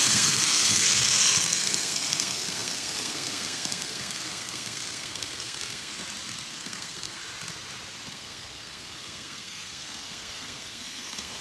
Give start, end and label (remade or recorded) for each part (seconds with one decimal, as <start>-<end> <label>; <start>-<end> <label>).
0.0-6.0 remade; 6.0-6.5 recorded; 6.5-7.2 remade; 7.2-8.1 recorded; 8.1-11.4 remade